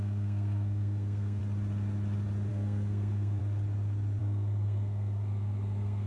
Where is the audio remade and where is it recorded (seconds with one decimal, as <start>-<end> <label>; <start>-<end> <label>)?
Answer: 0.0-1.4 remade; 1.4-2.5 recorded; 2.5-3.4 remade; 3.4-4.2 recorded; 4.2-6.1 remade